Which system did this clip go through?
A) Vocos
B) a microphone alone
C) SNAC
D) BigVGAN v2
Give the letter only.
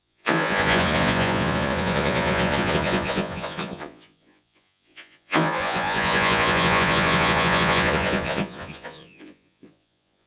A